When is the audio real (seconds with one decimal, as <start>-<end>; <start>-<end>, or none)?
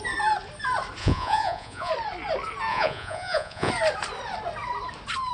0.0-1.0; 1.9-2.7; 3.7-5.3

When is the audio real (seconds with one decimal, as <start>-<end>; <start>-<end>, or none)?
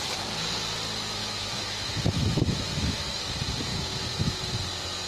0.0-1.2; 3.2-3.7; 4.5-5.1